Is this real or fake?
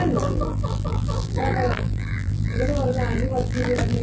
fake